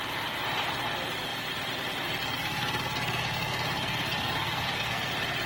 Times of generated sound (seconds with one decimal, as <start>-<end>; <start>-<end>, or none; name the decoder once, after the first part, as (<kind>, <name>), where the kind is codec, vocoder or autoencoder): 2.2-5.1 (codec, SNAC)